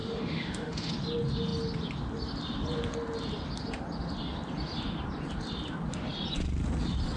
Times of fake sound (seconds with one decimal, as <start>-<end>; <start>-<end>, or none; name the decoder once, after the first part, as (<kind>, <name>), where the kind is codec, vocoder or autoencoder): 0.0-0.9 (autoencoder, DAC-VAE)